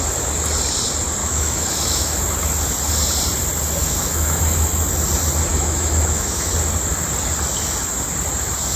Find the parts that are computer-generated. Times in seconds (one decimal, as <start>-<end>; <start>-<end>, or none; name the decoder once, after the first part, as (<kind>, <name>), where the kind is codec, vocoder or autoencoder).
1.2-2.2 (autoencoder, DAC-VAE); 3.8-4.4; 5.5-6.5